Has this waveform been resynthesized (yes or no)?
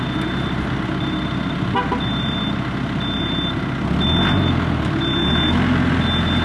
no